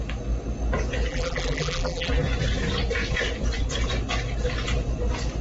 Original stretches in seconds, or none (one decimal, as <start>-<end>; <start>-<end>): 0.0-1.1; 2.1-5.4